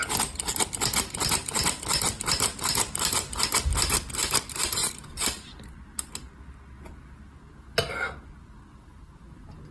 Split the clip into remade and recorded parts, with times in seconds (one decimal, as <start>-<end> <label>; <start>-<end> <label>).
0.0-9.7 recorded